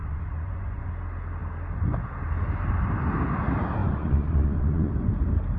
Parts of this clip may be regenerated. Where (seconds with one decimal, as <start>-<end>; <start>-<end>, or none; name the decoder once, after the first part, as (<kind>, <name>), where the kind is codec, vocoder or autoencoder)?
0.0-0.9 (vocoder, Vocos); 3.8-4.9